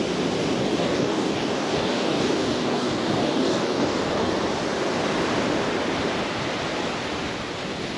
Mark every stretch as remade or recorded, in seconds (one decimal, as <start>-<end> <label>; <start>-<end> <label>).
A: 0.0-0.6 recorded; 0.6-4.3 remade; 4.3-8.0 recorded